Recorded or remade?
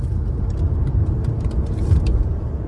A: recorded